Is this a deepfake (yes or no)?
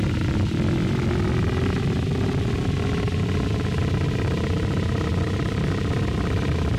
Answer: no